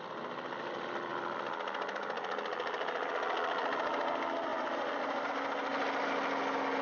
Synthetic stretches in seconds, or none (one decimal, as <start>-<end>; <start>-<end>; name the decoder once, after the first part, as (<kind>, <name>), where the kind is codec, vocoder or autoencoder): 1.1-3.1 (vocoder, BigVGAN v2); 4.5-5.3